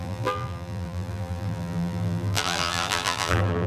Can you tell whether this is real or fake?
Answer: fake